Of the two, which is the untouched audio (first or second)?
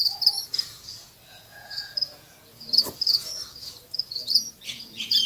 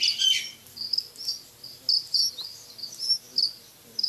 second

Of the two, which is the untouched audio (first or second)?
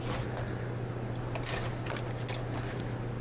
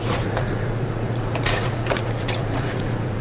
first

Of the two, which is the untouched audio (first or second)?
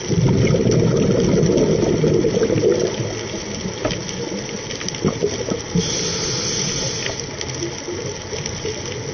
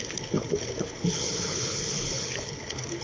first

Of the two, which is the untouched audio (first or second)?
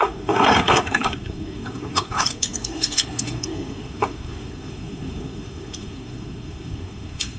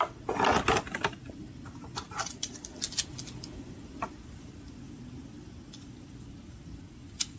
second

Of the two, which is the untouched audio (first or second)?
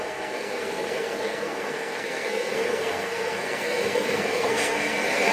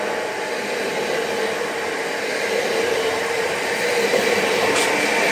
second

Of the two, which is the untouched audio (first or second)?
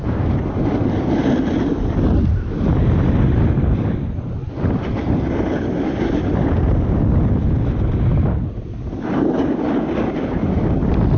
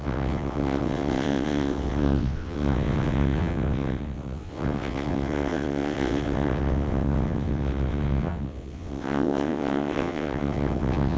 first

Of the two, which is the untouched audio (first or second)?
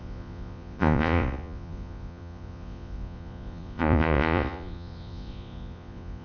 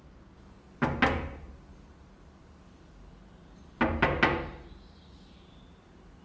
second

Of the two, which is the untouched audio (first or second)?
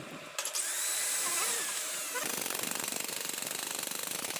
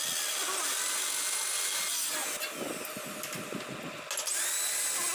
second